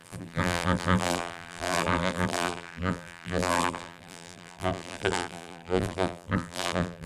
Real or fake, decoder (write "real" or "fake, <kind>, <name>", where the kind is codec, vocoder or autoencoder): fake, vocoder, BigVGAN v2